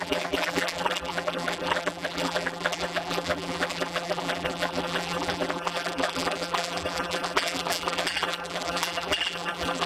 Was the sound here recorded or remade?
remade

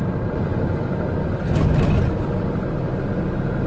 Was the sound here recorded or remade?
recorded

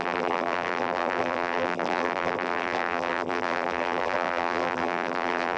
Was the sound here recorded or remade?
remade